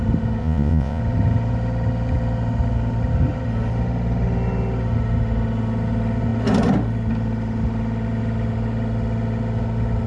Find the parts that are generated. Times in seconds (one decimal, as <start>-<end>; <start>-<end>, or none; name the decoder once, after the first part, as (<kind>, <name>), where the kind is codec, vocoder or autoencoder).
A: 0.4-1.0 (vocoder, Vocos)